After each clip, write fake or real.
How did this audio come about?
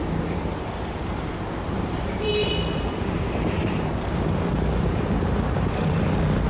fake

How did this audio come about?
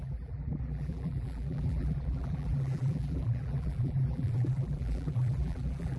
fake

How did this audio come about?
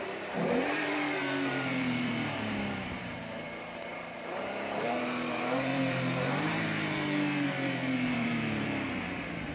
fake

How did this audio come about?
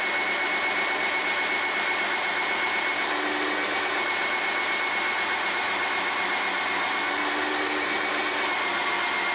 real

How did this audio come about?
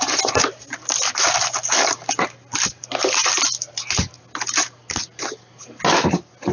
real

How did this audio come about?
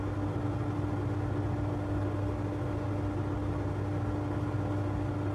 real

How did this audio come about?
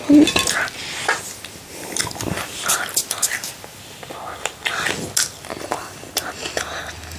real